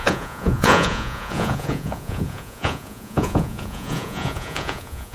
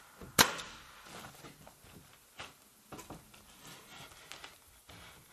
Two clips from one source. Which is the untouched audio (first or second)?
second